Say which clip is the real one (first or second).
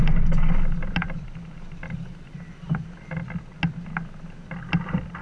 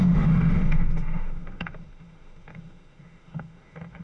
first